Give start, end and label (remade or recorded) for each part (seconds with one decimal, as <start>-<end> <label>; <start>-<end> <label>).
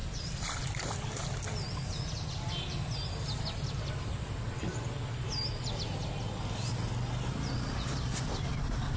0.0-9.0 recorded